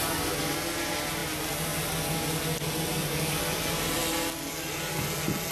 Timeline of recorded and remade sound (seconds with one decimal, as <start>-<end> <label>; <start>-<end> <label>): 0.0-5.5 recorded